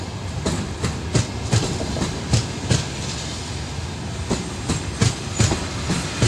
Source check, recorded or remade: recorded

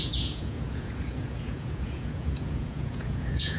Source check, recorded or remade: remade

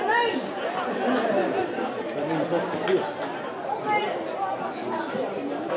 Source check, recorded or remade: recorded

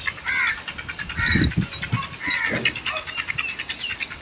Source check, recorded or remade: recorded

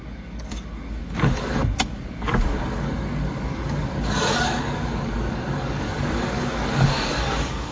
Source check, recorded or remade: remade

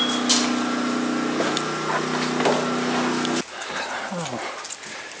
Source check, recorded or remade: recorded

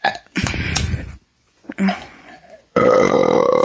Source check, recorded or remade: remade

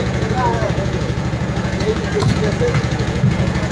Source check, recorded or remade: remade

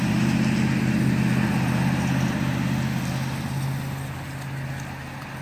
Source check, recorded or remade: recorded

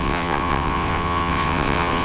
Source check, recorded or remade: remade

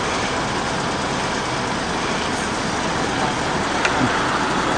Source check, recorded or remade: recorded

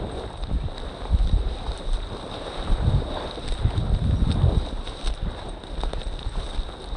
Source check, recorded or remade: recorded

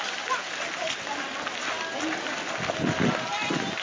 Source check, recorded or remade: recorded